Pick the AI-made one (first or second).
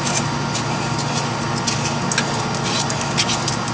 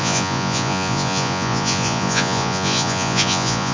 second